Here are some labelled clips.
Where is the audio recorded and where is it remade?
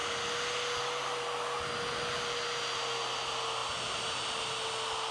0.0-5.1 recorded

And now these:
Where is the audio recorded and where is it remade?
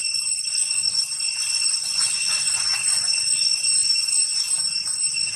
0.0-1.0 remade; 1.0-1.5 recorded; 1.5-3.4 remade; 3.4-5.4 recorded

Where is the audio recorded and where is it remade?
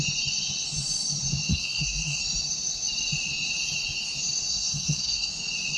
0.0-1.5 recorded; 1.5-2.2 remade; 2.2-4.5 recorded; 4.5-5.3 remade; 5.3-5.8 recorded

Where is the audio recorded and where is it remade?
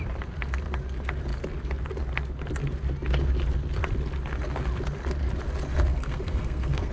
0.0-5.9 recorded; 5.9-6.9 remade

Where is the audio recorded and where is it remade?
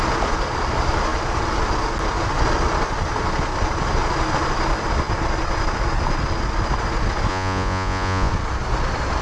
0.0-7.3 recorded; 7.3-8.3 remade; 8.3-9.2 recorded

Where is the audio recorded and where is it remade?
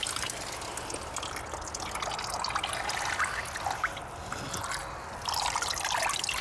0.0-6.4 recorded